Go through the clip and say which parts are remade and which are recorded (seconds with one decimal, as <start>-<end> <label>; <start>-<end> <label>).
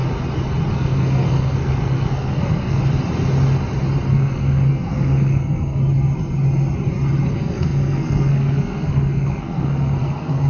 0.0-0.7 recorded; 0.7-2.8 remade; 2.8-4.1 recorded; 4.1-5.8 remade; 5.8-7.3 recorded; 7.3-10.5 remade